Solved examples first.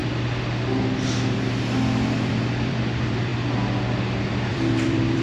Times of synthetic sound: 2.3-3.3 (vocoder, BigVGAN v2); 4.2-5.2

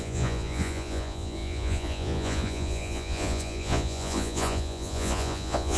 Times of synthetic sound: 0.0-5.8 (vocoder, Vocos)

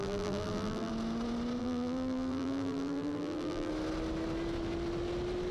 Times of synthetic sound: 0.0-0.9 (vocoder, BigVGAN v2); 1.6-3.7

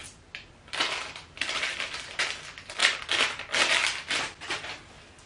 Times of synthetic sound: none